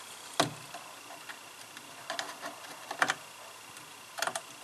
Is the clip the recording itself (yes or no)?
yes